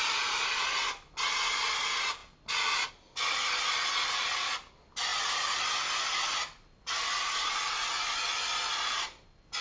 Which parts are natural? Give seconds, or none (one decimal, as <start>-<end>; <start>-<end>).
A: 0.0-9.6